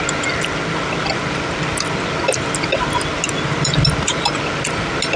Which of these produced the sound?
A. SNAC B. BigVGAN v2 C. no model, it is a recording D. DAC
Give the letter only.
C